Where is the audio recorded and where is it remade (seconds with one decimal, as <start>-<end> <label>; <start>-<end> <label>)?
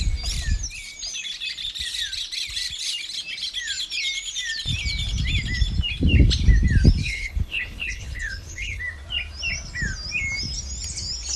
0.0-7.0 recorded; 7.0-8.8 remade; 8.8-11.4 recorded